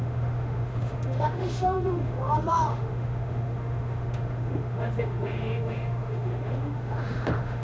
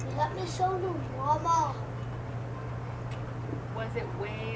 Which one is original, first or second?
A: second